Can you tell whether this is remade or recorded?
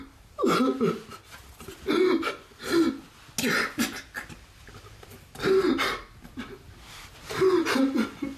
recorded